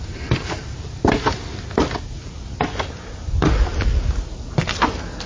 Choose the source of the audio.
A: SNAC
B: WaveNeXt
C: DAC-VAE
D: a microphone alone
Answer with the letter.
D